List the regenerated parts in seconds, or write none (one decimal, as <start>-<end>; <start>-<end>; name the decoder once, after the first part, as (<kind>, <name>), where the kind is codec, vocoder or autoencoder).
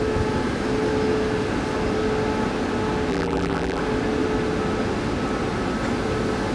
3.1-3.8 (vocoder, BigVGAN v2)